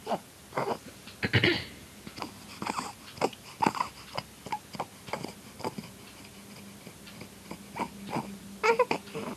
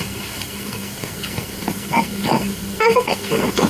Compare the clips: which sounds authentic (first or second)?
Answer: first